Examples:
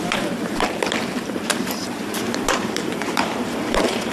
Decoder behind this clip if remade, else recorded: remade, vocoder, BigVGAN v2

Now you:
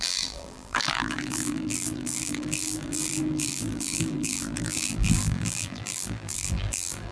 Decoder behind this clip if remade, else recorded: remade, vocoder, BigVGAN v2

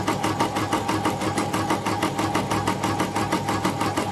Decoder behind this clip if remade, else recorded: recorded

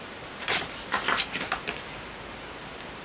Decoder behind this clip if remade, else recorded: remade, vocoder, BigVGAN v2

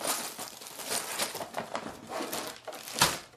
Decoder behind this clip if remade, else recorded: recorded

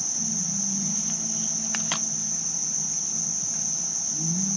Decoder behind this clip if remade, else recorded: recorded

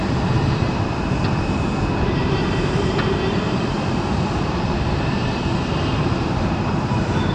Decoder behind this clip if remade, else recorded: remade, vocoder, BigVGAN v2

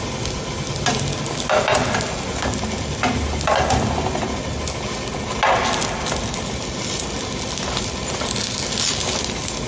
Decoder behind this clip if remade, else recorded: recorded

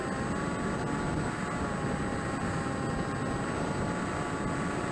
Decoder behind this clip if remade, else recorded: recorded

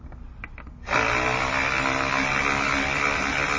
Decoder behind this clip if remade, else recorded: recorded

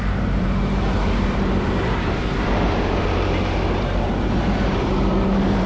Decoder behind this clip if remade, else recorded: remade, vocoder, BigVGAN v2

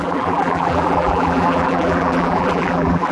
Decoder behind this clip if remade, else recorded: remade, vocoder, BigVGAN v2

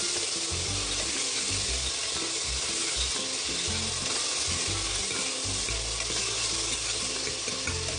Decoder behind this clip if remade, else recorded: recorded